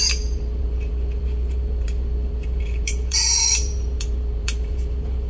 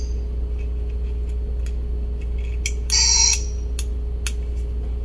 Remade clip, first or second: first